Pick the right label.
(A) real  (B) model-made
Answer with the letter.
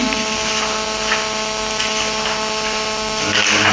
A